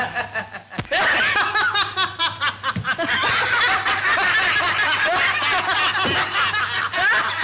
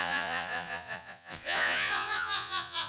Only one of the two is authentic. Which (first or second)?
first